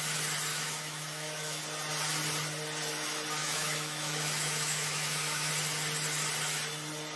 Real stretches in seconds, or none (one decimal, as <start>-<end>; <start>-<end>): 0.0-0.5; 1.6-3.4; 5.5-7.2